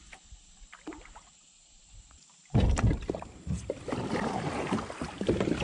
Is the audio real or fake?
real